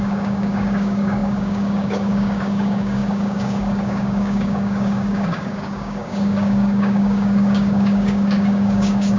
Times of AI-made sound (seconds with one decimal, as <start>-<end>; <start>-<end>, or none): 0.0-9.2